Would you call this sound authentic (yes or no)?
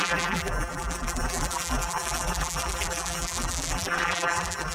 no